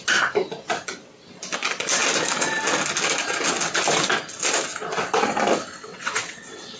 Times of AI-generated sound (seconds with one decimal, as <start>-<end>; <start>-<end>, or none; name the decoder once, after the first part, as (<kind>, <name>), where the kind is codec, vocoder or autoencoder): 5.8-6.8 (vocoder, WaveNeXt)